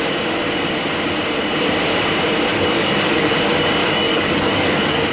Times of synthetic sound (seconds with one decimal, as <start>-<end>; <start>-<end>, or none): 2.5-3.3; 3.8-5.1